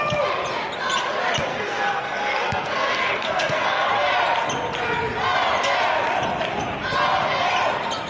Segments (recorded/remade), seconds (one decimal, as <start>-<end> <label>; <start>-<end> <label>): 0.0-1.5 recorded; 1.5-3.9 remade; 3.9-8.1 recorded